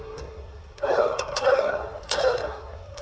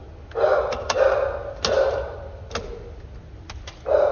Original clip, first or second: second